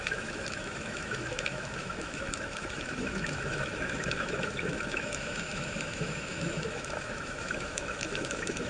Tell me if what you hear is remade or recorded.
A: remade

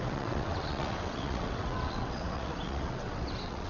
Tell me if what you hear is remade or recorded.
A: remade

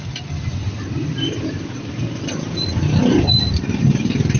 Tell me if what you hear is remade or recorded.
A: recorded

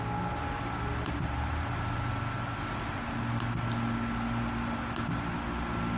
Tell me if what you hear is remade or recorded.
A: recorded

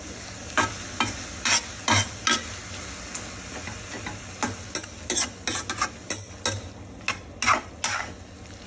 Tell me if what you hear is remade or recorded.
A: recorded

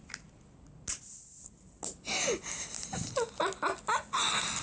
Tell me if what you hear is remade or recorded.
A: recorded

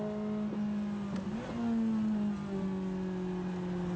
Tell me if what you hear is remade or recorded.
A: recorded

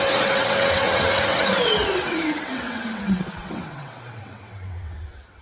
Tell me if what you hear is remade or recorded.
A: remade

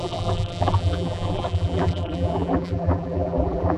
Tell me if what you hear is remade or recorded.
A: remade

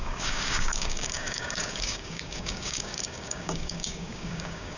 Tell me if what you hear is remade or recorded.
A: remade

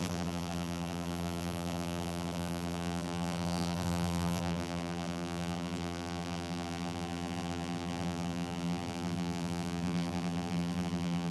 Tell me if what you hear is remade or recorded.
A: remade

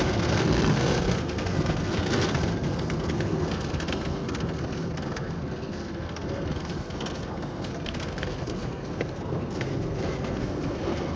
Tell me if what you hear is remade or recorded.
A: remade